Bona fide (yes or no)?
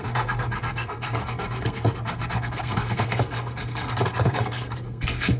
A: no